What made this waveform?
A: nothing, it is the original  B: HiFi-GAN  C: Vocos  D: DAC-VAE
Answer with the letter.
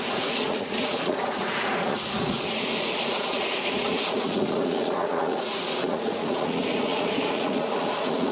C